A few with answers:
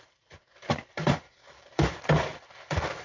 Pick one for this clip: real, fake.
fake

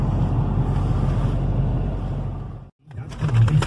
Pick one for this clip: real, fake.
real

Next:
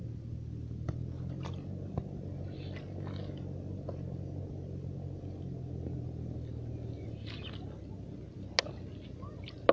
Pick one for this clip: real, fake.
real